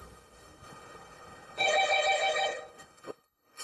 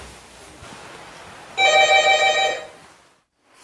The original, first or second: second